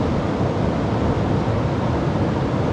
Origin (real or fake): real